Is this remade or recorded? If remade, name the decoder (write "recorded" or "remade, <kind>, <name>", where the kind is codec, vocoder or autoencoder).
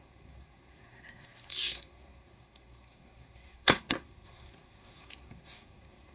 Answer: remade, codec, SNAC